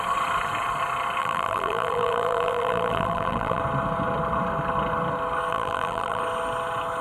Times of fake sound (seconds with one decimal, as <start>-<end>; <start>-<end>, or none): 1.2-3.6; 5.5-6.2